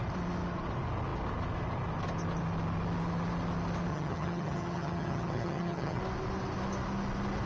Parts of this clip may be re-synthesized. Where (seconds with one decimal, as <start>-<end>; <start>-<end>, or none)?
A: 3.9-6.0